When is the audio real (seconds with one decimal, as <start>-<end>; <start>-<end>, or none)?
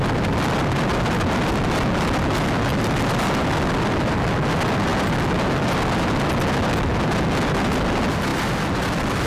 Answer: 0.0-9.3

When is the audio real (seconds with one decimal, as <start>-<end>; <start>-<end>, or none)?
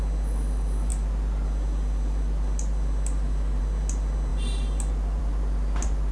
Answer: 0.0-6.1